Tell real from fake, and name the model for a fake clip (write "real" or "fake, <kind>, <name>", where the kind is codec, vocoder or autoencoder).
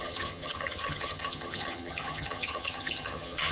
fake, vocoder, HiFi-GAN